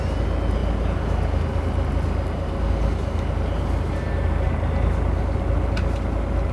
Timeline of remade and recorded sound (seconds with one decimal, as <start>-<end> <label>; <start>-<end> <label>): 0.0-6.5 recorded